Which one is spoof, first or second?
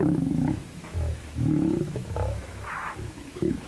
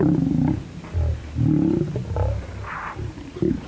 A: first